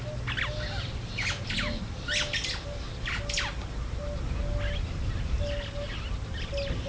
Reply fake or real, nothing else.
real